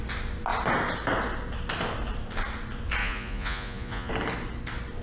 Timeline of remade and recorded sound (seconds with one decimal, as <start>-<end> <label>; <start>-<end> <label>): 0.0-3.0 recorded; 3.0-4.1 remade; 4.1-5.0 recorded